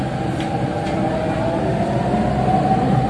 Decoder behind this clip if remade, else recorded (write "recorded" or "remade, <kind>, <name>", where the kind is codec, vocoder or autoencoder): recorded